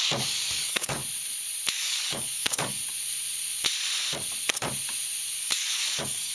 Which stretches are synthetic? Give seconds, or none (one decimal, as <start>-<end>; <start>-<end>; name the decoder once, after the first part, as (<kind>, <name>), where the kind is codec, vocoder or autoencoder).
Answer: 0.0-1.0 (codec, DAC); 1.7-2.8; 5.4-6.3